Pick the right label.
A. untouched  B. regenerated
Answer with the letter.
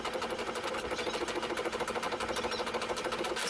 A